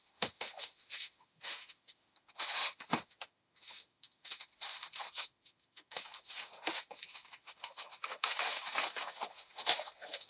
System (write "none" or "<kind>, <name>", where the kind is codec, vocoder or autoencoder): autoencoder, DAC-VAE